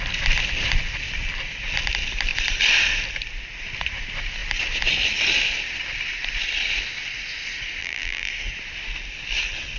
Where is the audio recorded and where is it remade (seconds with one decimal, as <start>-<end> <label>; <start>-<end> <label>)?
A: 0.0-7.8 recorded; 7.8-8.3 remade; 8.3-9.8 recorded